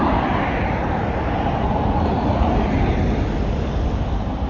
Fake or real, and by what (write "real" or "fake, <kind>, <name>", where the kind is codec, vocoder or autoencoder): real